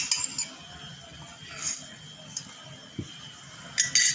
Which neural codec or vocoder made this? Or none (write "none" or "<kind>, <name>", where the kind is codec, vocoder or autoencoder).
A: none